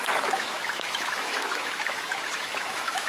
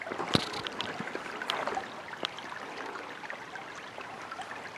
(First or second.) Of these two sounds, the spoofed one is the first